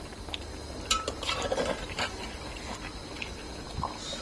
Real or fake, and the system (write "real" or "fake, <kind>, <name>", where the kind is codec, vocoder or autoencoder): real